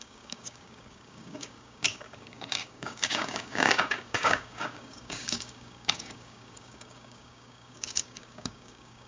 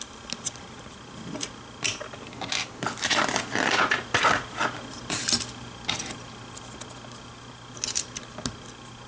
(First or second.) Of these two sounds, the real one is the second